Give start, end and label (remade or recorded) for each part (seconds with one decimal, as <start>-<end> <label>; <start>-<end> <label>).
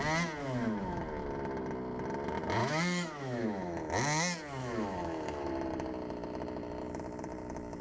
0.0-0.4 recorded; 0.4-1.0 remade; 1.0-2.6 recorded; 2.6-3.8 remade; 3.8-4.6 recorded; 4.6-5.5 remade; 5.5-7.8 recorded